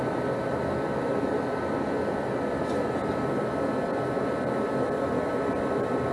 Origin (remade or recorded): recorded